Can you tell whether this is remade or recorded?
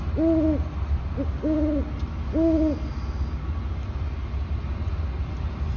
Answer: recorded